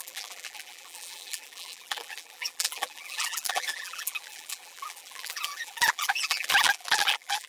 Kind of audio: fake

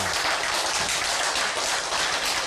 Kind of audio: real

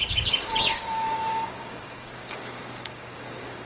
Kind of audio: fake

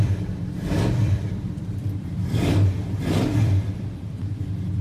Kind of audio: fake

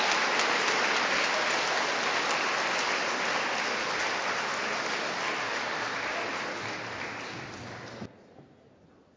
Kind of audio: real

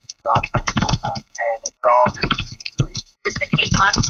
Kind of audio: fake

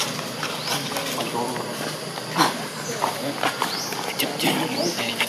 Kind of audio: real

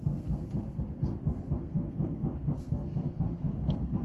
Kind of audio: fake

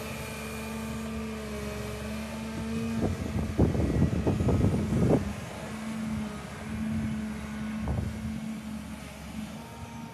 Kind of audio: real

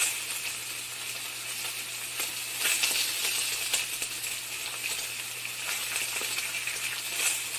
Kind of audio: real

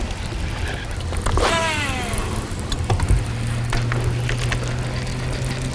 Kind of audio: real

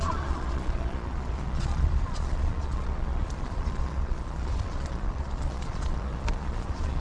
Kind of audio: fake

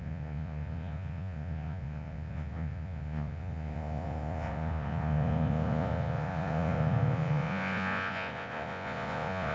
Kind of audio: fake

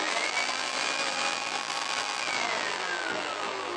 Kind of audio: fake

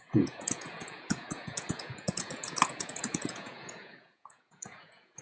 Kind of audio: fake